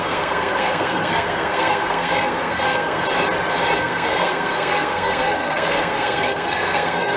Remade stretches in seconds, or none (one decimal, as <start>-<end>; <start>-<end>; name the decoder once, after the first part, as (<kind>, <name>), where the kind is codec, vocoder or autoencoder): 0.0-3.0 (codec, SNAC); 3.8-7.2